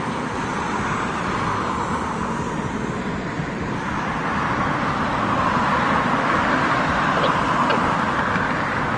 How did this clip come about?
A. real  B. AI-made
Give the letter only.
A